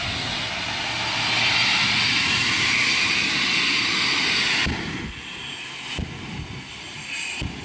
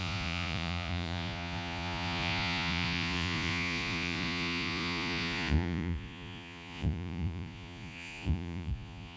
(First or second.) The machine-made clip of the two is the second